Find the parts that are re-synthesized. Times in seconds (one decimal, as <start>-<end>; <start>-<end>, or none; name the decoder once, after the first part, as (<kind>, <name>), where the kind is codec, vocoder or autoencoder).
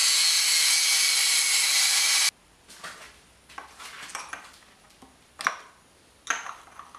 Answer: none